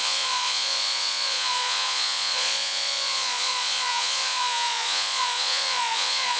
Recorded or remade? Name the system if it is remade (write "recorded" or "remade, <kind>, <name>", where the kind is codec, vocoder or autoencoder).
remade, vocoder, Vocos